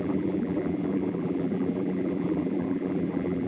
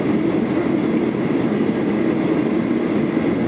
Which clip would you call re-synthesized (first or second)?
first